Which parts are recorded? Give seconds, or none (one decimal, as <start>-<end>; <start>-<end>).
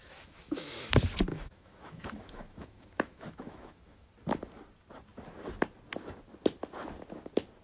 0.9-1.3; 4.1-7.6